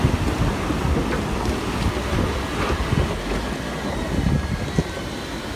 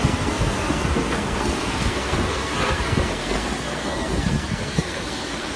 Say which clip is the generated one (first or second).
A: second